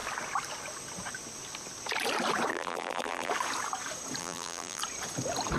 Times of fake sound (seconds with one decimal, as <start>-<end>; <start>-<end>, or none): 2.5-3.3; 4.2-4.8